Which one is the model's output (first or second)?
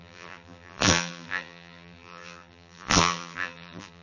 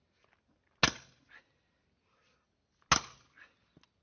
first